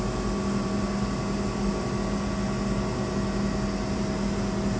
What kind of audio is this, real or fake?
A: real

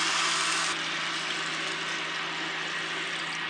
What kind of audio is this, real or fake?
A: real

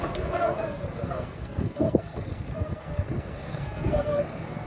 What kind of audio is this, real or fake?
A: fake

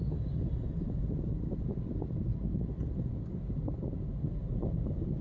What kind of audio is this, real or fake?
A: real